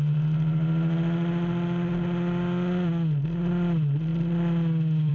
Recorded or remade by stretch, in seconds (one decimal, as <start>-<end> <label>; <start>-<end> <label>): 0.0-5.1 recorded